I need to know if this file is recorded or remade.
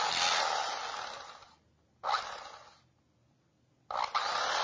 recorded